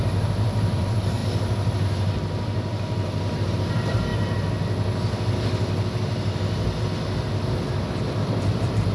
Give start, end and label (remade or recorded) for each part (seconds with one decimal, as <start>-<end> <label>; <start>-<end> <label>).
0.0-1.2 remade; 1.2-3.5 recorded; 3.5-4.1 remade; 4.1-8.2 recorded; 8.2-8.9 remade